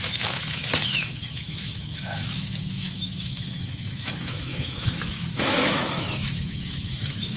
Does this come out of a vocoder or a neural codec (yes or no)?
yes